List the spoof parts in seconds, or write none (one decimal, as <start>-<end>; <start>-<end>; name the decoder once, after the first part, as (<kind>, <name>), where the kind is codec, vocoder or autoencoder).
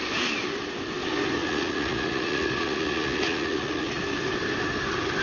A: 1.4-4.0 (vocoder, Vocos)